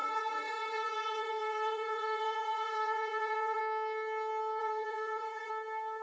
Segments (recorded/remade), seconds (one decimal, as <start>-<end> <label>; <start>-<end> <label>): 0.0-3.6 remade; 3.6-4.6 recorded; 4.6-5.5 remade; 5.5-6.0 recorded